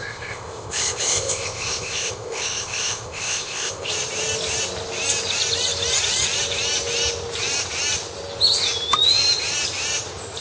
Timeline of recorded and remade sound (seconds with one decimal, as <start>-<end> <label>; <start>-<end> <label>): 0.0-3.9 remade; 3.9-10.4 recorded